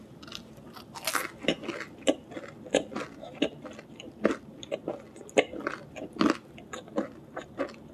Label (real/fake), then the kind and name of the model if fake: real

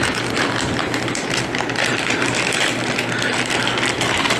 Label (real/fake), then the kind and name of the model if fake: real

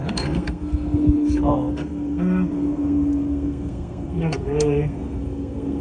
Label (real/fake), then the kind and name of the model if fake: fake, codec, SNAC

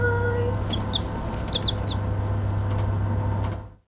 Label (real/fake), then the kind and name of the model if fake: real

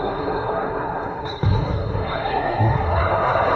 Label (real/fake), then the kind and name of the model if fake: fake, codec, SNAC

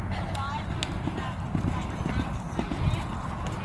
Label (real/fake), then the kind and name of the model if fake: real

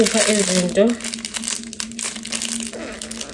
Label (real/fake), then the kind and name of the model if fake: real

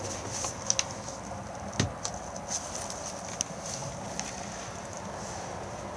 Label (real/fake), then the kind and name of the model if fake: real